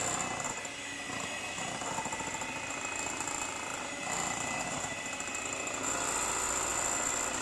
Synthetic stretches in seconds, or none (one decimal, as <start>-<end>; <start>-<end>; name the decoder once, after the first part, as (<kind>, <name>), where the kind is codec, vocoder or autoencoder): 3.7-5.4 (vocoder, BigVGAN v2); 6.7-7.4